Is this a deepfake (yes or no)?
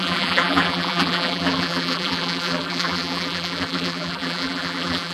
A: yes